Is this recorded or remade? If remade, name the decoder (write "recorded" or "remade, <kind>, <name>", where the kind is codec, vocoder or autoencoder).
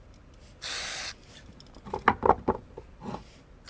remade, vocoder, BigVGAN v2